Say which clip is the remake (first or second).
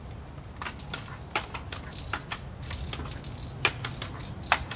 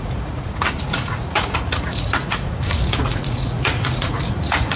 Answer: second